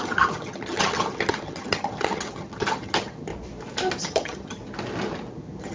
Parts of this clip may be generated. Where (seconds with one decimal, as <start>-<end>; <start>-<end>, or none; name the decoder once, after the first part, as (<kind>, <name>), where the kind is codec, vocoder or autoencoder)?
0.0-3.3 (vocoder, HiFi-GAN); 4.0-4.6; 5.3-5.7